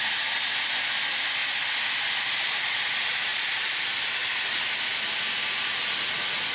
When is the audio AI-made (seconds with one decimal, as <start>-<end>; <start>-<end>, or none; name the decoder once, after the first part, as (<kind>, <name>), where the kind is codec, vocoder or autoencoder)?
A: none